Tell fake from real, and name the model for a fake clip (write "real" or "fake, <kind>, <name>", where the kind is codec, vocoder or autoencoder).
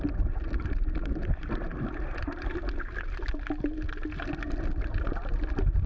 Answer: real